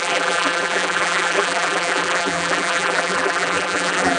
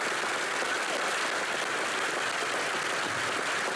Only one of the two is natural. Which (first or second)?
second